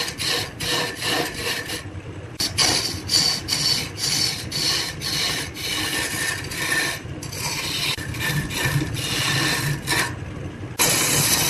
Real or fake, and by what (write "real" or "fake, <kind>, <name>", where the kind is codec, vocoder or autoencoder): real